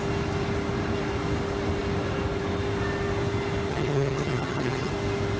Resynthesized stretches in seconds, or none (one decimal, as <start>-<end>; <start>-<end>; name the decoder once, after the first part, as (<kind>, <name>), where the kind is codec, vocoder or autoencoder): 3.7-4.9 (vocoder, HiFi-GAN)